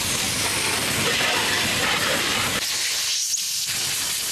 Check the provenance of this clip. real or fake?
real